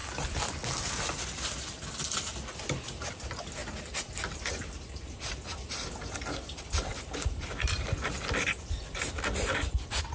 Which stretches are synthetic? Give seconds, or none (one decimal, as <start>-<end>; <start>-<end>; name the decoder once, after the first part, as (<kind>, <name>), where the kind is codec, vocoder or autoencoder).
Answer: none